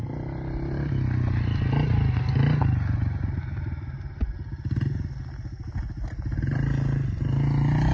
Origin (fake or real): real